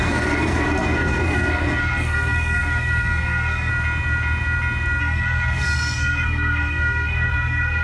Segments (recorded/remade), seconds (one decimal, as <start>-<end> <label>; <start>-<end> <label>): 0.0-3.7 remade; 3.7-5.0 recorded; 5.0-7.8 remade